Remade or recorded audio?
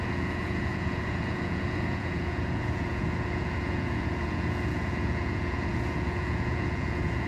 remade